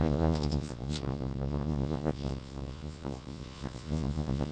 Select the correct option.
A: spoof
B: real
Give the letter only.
A